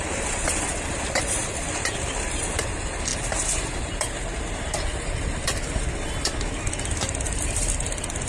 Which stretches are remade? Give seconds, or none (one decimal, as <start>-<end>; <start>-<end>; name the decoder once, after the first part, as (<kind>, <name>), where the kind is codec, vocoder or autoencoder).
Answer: 0.0-3.1 (vocoder, BigVGAN v2); 5.1-8.3